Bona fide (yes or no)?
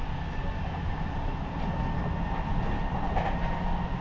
yes